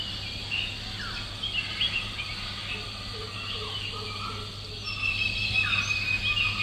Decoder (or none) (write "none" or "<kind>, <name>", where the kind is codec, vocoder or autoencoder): none